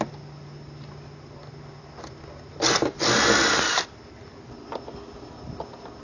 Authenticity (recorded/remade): recorded